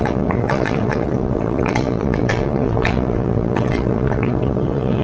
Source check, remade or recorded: remade